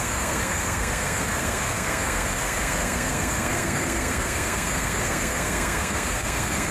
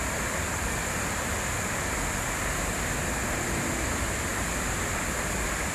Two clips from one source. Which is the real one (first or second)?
second